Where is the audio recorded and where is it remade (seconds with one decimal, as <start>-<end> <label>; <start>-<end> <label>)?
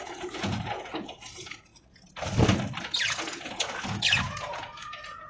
0.0-1.7 remade; 1.7-2.8 recorded; 2.8-5.3 remade